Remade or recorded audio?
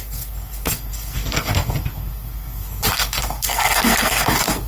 remade